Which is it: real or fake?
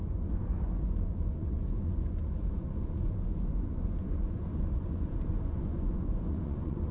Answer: fake